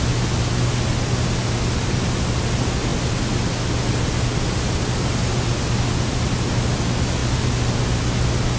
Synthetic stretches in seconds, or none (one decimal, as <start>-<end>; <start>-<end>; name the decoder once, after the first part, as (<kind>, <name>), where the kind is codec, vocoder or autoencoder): none